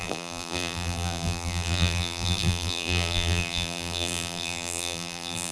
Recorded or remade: remade